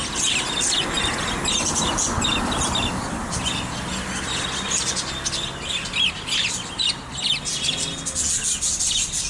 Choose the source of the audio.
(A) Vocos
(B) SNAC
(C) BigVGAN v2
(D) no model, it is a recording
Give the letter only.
D